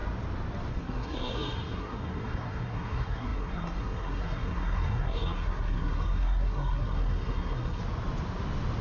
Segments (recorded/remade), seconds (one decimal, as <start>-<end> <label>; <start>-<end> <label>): 0.0-0.7 recorded; 0.7-7.8 remade; 7.8-8.8 recorded